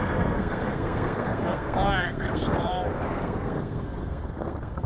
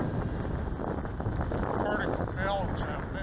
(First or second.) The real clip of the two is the second